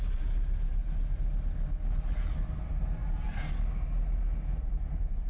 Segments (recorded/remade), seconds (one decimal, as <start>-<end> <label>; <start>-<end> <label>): 0.0-0.8 remade; 0.8-2.5 recorded; 2.5-3.0 remade; 3.0-5.3 recorded